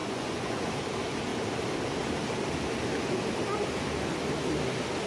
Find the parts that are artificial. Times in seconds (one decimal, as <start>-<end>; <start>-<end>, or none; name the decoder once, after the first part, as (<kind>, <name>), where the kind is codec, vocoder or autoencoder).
0.0-0.7 (vocoder, Vocos)